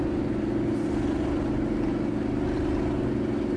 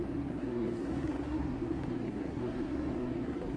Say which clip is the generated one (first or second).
second